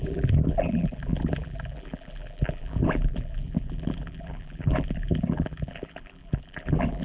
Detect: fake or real fake